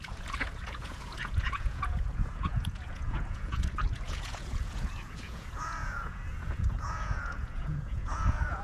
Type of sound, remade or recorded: remade